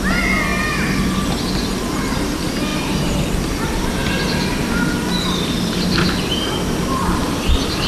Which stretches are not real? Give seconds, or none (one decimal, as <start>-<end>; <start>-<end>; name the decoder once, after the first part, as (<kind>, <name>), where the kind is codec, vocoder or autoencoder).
none